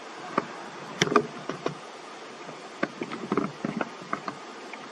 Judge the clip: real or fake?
real